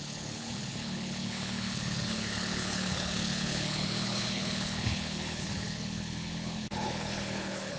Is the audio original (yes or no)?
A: no